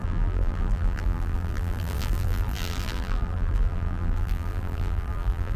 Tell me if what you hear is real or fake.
fake